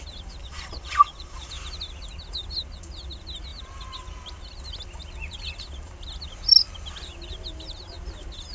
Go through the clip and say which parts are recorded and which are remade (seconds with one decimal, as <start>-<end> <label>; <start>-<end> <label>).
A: 0.0-0.4 recorded; 0.4-1.5 remade; 1.5-8.5 recorded